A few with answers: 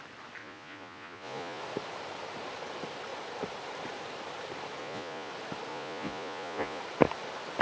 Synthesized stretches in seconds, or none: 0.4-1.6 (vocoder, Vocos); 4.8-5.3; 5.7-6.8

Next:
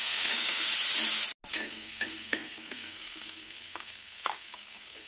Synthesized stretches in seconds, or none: 0.0-0.7 (codec, SNAC); 1.5-5.1

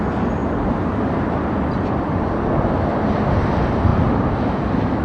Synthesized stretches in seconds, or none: 0.4-2.2 (vocoder, BigVGAN v2); 3.9-5.0

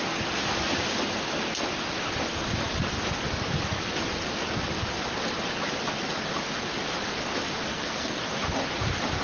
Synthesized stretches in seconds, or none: 7.7-8.2 (codec, SNAC)

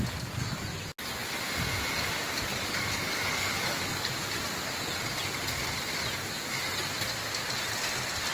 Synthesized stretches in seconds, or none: 2.5-4.1 (codec, DAC)

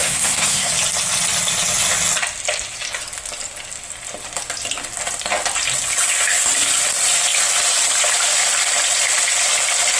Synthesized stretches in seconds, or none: 0.0-0.7 (codec, SNAC)